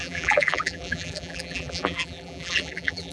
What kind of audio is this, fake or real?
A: fake